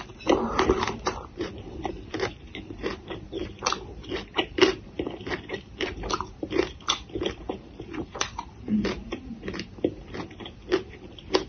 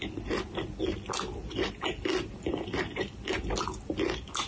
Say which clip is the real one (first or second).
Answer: second